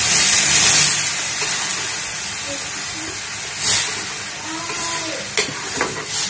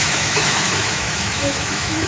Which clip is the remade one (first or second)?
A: second